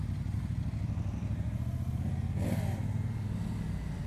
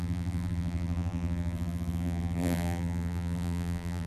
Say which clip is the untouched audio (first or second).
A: first